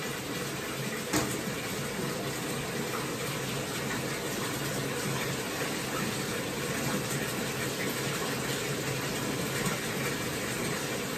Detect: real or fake real